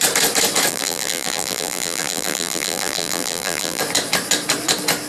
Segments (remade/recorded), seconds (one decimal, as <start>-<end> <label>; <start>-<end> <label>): 0.0-0.7 recorded; 0.7-3.8 remade; 3.8-5.1 recorded